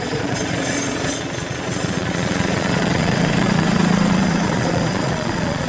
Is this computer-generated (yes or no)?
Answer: yes